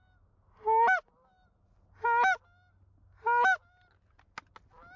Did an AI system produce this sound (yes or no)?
no